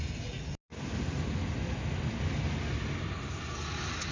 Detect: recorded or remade recorded